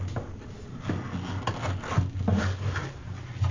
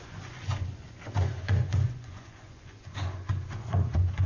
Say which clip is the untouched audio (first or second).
first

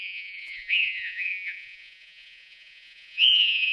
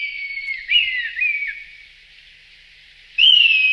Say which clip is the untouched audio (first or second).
second